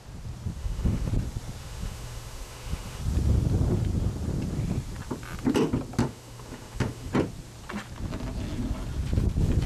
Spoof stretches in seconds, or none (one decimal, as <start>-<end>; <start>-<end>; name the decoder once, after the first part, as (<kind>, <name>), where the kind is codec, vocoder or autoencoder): 0.6-1.1 (autoencoder, DAC-VAE); 1.6-3.0; 6.0-7.1